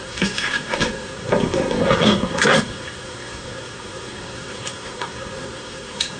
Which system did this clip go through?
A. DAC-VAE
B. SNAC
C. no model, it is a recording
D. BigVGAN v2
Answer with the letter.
B